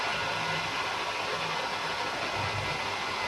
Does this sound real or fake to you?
real